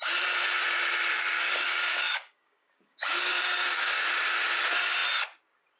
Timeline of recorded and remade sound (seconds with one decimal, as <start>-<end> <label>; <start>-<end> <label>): 0.0-1.1 recorded; 1.1-4.0 remade; 4.0-5.8 recorded